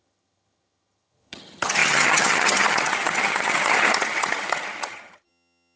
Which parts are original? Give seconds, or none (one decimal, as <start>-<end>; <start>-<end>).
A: none

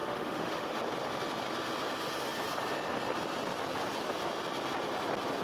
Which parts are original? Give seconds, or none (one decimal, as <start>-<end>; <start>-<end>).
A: 0.7-5.4

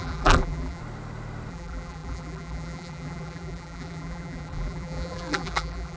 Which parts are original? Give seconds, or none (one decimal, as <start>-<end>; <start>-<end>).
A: 0.8-1.5

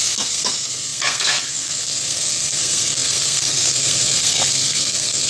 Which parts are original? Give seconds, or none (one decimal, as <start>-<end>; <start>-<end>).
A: none

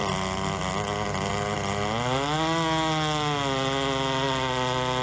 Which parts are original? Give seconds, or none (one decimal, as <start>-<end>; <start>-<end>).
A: 0.0-5.0

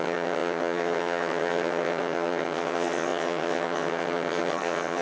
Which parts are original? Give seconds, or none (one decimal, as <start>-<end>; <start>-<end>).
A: none

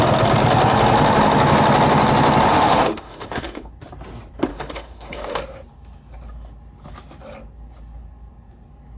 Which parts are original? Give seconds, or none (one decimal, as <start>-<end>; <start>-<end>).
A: 0.0-2.5; 3.7-4.5; 5.4-9.0

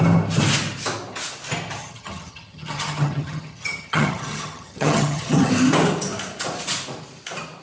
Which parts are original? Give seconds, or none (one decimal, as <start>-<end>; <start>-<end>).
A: 0.0-1.8; 5.5-7.6